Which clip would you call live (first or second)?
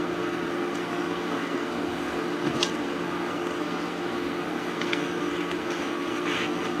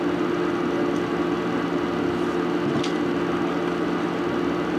second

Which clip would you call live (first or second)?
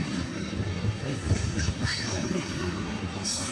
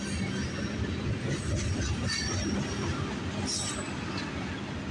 second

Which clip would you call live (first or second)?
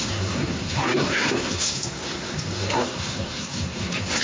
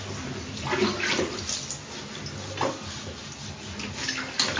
second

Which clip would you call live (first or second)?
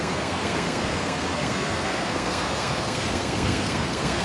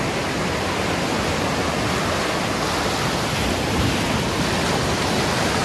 second